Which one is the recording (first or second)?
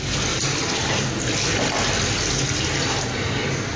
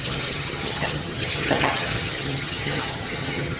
first